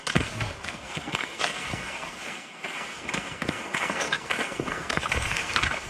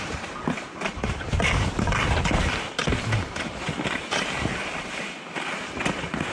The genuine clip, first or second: second